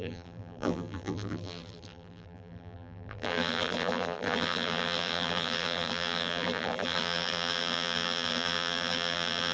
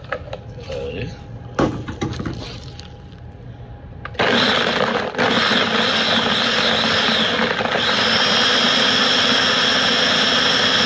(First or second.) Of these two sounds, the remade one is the first